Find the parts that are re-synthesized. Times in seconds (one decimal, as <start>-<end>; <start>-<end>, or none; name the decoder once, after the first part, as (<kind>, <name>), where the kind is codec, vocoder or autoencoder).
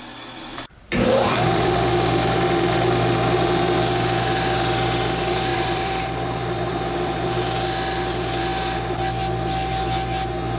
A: 0.5-1.9 (vocoder, BigVGAN v2); 5.5-7.3